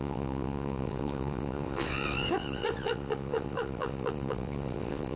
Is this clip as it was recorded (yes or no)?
no